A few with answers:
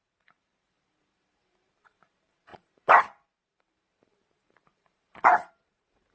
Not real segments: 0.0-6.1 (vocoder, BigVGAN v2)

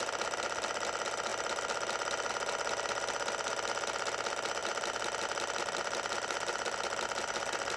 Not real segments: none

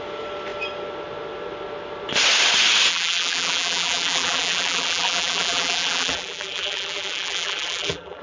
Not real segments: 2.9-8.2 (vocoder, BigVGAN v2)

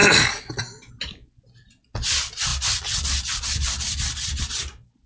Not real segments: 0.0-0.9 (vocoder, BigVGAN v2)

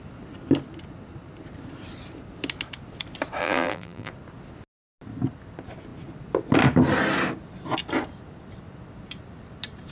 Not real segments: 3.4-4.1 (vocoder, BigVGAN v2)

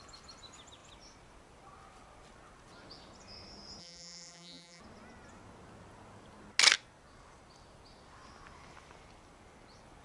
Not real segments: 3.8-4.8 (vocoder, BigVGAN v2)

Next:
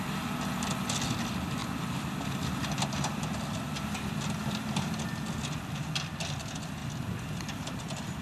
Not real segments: 1.6-3.5 (vocoder, BigVGAN v2); 4.4-5.0

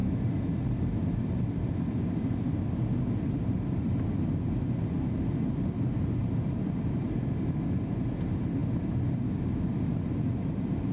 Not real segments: 0.0-4.0 (vocoder, BigVGAN v2)